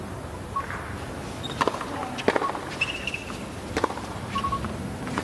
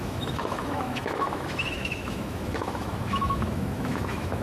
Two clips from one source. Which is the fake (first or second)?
second